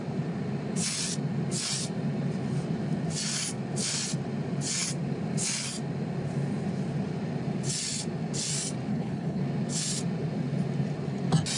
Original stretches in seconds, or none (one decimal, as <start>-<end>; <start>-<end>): 0.0-8.9; 9.4-11.6

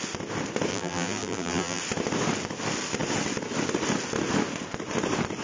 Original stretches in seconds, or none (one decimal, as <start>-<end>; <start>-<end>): 0.0-0.7; 1.8-5.4

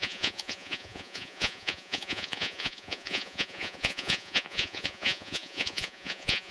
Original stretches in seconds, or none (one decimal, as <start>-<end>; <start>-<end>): none

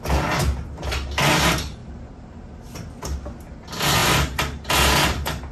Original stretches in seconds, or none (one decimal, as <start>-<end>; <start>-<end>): 0.0-1.8; 2.5-5.5

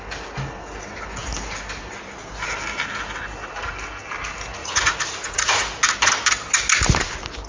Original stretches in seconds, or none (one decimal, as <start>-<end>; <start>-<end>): 0.0-4.6; 5.6-7.5

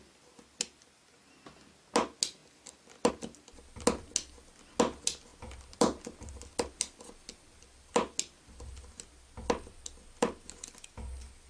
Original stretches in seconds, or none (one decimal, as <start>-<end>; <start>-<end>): 0.0-11.5

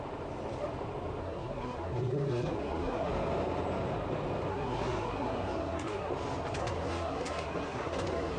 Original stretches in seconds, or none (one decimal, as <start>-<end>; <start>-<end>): 0.0-1.2; 3.1-4.5; 6.1-6.6